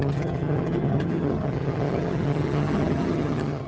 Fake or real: fake